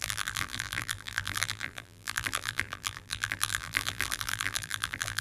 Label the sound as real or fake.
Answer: fake